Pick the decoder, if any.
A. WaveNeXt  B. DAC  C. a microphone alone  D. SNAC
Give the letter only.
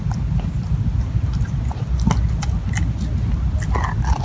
C